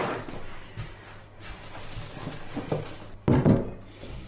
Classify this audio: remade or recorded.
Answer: recorded